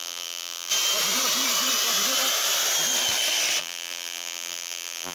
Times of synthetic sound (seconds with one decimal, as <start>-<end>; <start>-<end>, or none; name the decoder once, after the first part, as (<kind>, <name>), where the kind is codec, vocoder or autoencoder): 0.0-0.7 (vocoder, BigVGAN v2); 3.6-5.1